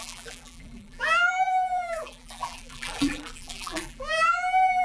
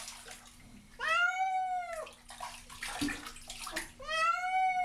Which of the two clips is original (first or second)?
second